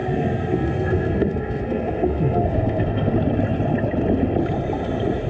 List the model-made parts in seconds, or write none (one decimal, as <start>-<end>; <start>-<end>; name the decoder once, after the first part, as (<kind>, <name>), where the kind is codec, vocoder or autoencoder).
0.0-3.1 (codec, SNAC)